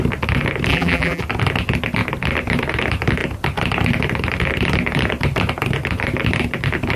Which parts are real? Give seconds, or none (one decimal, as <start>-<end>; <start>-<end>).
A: 0.0-0.7; 1.2-7.0